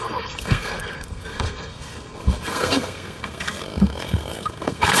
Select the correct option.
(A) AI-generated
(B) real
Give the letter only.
A